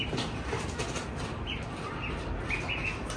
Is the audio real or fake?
real